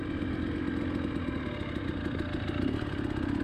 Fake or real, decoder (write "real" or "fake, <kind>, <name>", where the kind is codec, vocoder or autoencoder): real